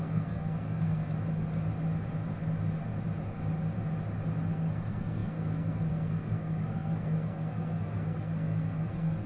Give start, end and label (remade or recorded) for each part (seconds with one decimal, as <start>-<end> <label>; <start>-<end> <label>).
0.0-1.1 remade; 1.1-4.5 recorded; 4.5-9.3 remade